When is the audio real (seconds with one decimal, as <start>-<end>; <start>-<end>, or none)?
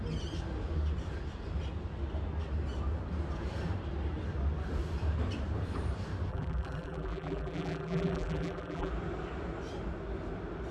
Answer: 0.0-6.3; 8.9-10.7